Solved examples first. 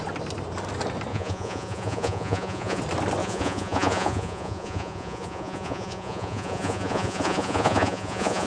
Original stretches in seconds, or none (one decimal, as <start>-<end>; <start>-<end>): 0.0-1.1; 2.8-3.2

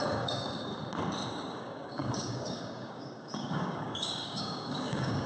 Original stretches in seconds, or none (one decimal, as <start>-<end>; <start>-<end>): 0.7-1.3

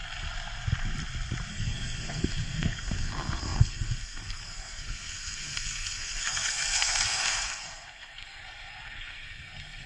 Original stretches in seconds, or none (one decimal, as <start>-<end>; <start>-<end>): 0.0-1.5